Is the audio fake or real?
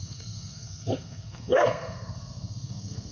fake